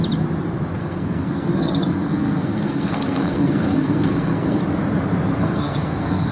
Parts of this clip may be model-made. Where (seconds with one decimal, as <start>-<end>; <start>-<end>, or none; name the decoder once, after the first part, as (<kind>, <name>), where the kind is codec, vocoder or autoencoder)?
0.8-4.6 (codec, SNAC); 5.4-6.3